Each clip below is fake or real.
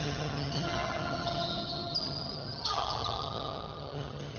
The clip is fake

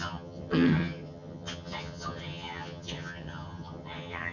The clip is fake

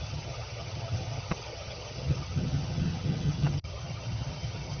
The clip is fake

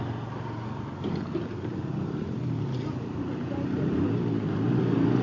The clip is real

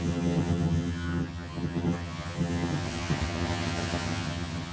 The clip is fake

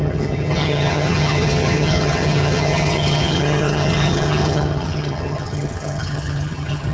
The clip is fake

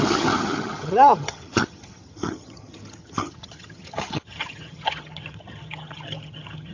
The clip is fake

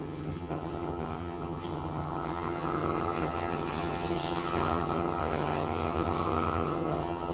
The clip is fake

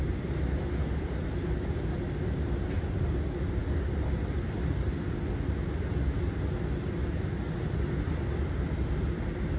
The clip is real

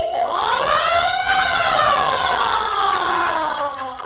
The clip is fake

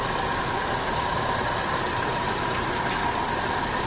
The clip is real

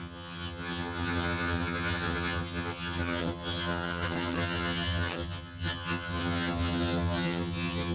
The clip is fake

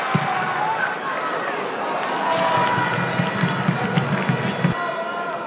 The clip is real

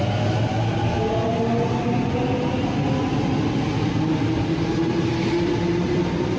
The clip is real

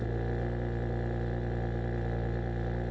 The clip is real